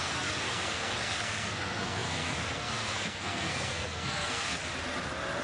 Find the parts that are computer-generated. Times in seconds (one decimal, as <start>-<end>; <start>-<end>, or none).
0.0-4.6